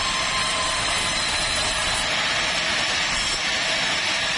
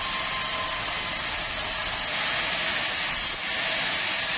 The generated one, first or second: first